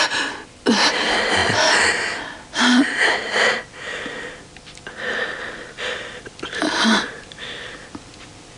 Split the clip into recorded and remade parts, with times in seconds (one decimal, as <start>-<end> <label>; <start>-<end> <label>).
0.0-8.6 recorded